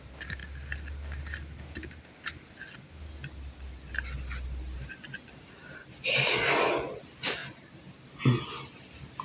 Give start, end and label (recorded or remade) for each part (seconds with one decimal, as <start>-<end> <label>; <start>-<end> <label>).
0.0-0.4 recorded; 0.4-2.5 remade; 2.5-5.6 recorded; 5.6-6.3 remade; 6.3-7.4 recorded; 7.4-8.2 remade; 8.2-9.2 recorded